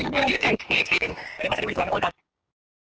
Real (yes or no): no